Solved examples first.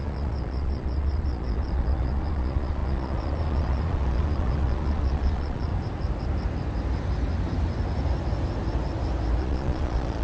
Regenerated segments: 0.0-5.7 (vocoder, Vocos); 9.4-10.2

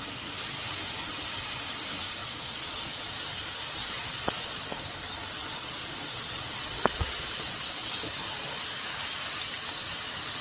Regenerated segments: 2.2-3.1 (vocoder, Vocos); 3.8-4.6; 5.4-7.9